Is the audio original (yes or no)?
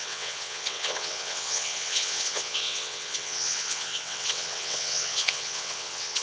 no